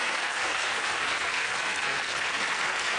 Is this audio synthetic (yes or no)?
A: yes